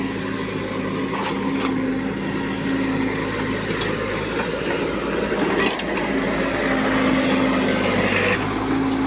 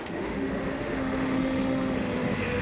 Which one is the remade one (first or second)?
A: second